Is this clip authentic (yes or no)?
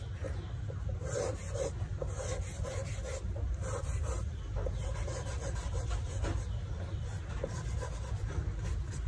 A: yes